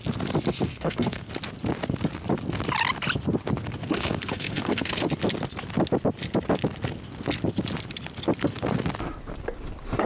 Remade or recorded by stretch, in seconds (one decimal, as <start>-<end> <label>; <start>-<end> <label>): 0.0-0.7 recorded; 0.7-1.3 remade; 1.3-3.8 recorded; 3.8-5.1 remade; 5.1-10.1 recorded